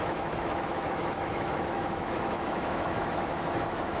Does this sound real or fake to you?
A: fake